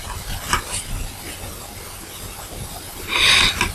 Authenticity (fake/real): real